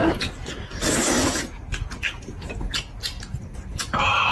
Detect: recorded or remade recorded